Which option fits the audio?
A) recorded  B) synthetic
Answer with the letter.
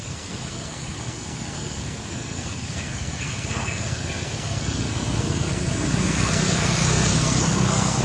B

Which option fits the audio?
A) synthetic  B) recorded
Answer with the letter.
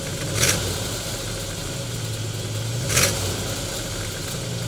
B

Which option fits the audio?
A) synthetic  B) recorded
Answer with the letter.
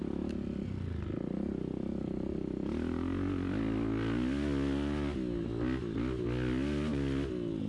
B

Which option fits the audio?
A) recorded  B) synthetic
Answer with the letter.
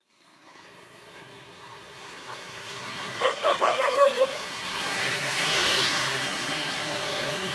B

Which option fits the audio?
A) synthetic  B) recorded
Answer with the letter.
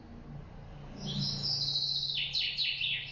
B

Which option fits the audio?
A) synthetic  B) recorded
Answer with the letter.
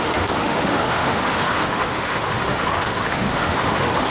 A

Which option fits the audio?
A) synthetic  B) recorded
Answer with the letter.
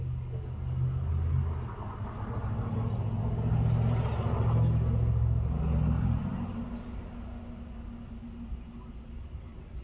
B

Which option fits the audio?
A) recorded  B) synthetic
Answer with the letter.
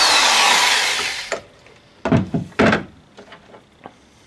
A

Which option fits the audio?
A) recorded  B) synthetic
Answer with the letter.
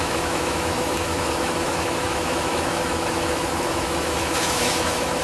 B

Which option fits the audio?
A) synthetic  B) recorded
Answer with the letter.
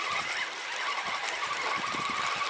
B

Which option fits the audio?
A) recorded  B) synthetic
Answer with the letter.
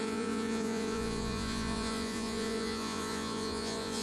B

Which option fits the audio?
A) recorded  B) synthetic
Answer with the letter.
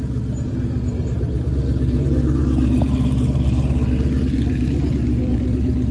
A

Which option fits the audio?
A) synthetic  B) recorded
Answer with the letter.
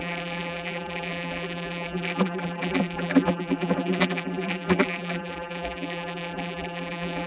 A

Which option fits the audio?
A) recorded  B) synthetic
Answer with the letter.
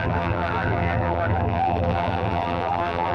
B